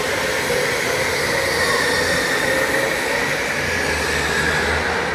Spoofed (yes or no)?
no